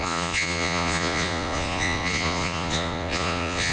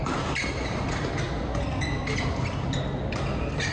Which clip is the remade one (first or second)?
first